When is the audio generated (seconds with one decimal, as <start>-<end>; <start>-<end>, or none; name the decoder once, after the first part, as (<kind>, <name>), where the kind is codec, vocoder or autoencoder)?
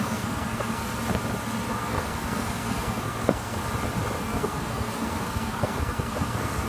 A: 0.0-0.9 (codec, SNAC); 1.7-3.6; 4.2-6.7